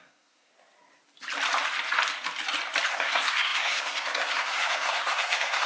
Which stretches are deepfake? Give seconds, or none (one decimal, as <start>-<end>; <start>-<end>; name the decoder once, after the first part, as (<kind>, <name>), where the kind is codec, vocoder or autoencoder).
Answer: 0.0-0.5 (codec, SNAC); 2.9-5.7